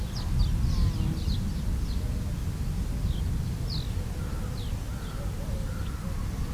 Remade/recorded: recorded